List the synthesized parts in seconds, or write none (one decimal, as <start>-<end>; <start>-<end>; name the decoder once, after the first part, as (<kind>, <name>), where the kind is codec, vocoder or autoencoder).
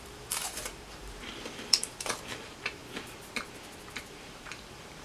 0.0-2.8 (vocoder, BigVGAN v2); 4.1-5.0